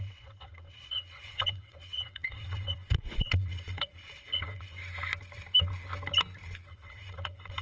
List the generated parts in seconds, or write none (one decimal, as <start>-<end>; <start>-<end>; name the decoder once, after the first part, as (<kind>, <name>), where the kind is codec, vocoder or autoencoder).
0.0-4.8 (vocoder, WaveNeXt); 6.7-7.6